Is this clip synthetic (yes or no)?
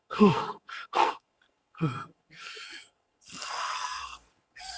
yes